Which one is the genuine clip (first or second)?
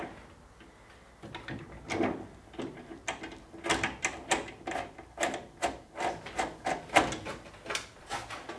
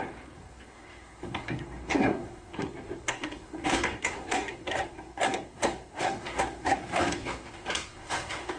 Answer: first